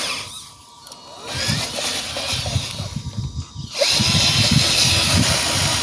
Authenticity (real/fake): real